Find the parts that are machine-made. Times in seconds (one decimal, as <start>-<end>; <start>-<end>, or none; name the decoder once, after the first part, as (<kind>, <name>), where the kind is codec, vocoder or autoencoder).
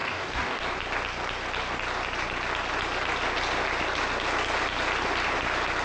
0.0-0.6 (codec, DAC)